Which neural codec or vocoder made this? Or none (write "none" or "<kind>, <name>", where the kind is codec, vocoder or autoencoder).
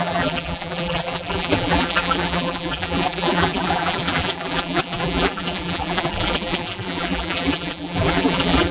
vocoder, BigVGAN v2